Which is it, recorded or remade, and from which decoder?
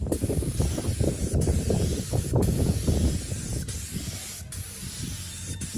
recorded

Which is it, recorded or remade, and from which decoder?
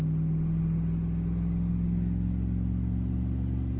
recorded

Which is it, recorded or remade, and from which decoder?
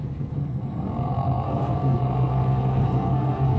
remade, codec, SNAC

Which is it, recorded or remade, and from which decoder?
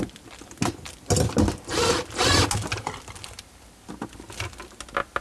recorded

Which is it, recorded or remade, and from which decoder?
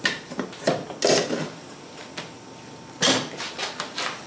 recorded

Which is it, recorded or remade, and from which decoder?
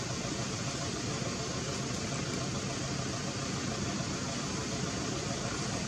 remade, vocoder, BigVGAN v2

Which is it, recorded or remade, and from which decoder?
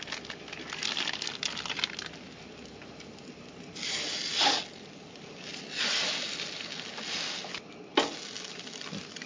recorded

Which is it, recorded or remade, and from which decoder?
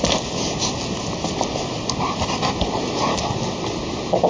recorded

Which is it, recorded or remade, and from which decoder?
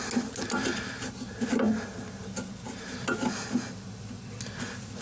recorded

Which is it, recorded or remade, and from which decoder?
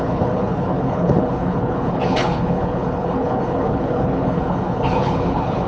remade, codec, HILCodec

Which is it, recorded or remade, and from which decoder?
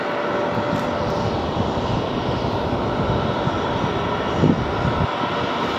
recorded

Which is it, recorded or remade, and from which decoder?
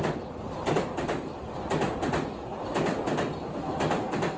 recorded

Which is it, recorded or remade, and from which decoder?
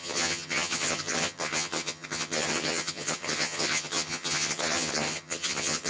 remade, vocoder, HiFi-GAN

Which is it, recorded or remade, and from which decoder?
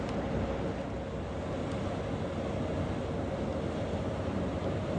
recorded